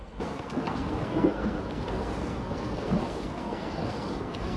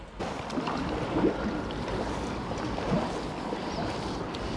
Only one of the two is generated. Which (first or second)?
first